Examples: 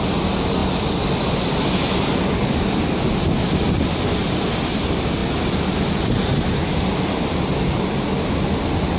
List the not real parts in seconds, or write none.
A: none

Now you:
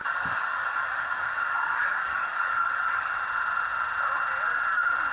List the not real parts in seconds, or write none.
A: 0.0-3.1 (codec, DAC)